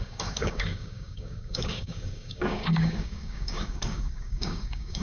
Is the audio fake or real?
fake